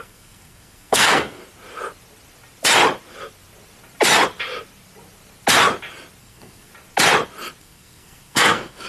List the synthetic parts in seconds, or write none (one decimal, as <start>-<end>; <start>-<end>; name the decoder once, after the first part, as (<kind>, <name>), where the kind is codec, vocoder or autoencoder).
0.0-1.4 (codec, SNAC); 6.2-6.7; 7.6-8.9